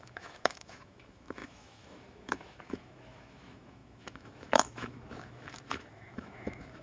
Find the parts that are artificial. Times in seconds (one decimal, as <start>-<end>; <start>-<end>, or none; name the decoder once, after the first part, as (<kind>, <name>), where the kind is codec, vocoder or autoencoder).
0.0-6.8 (autoencoder, DAC-VAE)